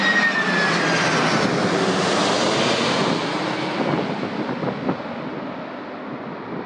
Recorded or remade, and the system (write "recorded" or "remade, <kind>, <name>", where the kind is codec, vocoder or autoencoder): recorded